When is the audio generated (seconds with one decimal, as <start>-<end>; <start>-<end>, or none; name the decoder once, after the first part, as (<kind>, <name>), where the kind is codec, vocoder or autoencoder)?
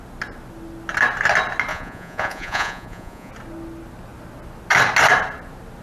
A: 1.7-3.3 (vocoder, Vocos)